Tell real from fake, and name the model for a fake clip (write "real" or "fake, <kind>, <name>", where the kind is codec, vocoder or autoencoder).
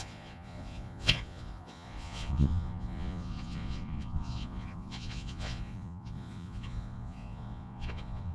fake, vocoder, Vocos